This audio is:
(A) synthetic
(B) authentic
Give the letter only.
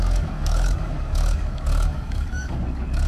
A